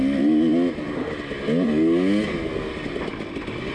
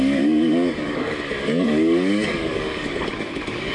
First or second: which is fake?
second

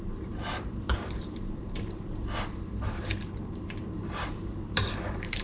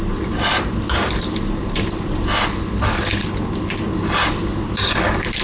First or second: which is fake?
first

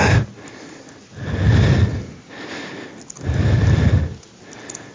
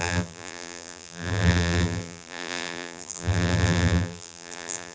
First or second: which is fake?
second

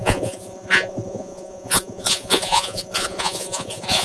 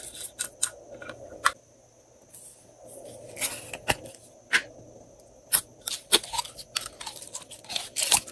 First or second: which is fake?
first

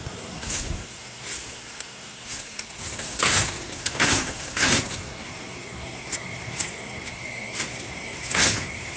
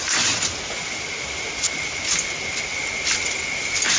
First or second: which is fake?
first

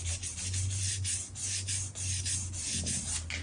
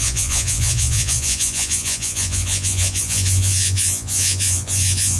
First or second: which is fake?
second